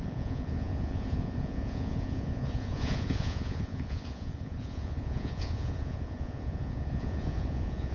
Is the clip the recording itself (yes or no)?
no